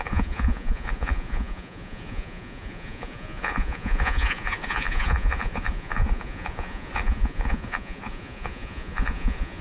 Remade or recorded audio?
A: remade